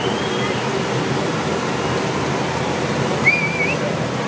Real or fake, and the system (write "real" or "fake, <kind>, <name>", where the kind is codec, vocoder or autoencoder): real